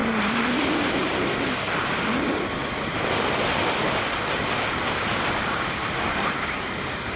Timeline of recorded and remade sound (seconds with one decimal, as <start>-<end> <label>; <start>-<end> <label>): 0.0-1.3 remade; 1.3-7.2 recorded